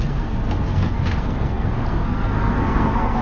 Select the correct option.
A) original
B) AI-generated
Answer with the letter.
B